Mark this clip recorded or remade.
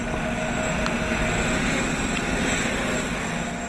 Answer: recorded